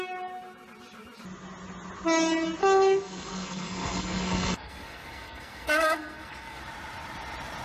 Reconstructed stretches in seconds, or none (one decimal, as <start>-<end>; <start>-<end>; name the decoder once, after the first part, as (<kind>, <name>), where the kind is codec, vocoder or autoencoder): 2.6-6.6 (codec, SNAC)